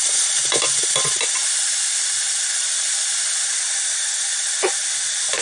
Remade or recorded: recorded